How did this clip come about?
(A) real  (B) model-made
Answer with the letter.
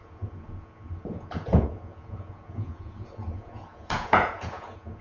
B